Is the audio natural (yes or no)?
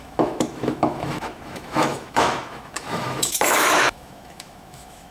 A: no